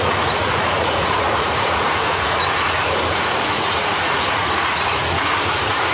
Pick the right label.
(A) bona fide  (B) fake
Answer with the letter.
B